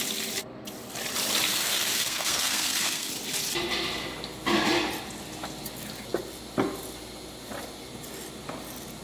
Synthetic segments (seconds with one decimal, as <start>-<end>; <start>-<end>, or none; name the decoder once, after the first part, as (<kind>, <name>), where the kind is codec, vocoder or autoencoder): 1.5-3.1 (codec, SNAC)